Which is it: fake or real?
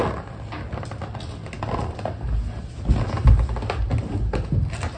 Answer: real